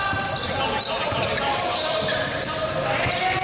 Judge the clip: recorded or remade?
recorded